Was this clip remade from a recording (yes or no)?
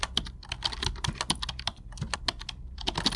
no